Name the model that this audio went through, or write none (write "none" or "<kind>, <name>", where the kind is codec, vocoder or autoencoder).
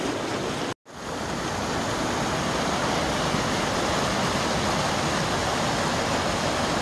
none